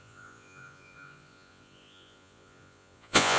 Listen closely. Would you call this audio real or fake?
fake